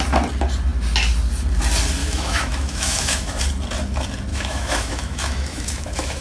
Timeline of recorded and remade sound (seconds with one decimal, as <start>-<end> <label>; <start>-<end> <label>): 0.0-2.0 recorded; 2.0-3.4 remade; 3.4-4.3 recorded; 4.3-6.2 remade